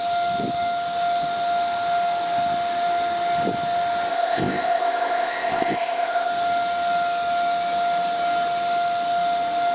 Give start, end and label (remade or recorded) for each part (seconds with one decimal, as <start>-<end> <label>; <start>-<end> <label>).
0.0-4.1 recorded; 4.1-6.3 remade; 6.3-9.7 recorded